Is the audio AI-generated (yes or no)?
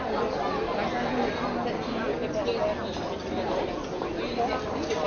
no